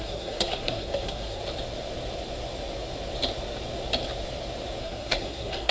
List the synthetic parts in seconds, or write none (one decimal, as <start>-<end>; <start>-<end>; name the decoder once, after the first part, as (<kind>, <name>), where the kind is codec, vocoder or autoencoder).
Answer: 0.0-1.4 (codec, SNAC); 4.8-5.7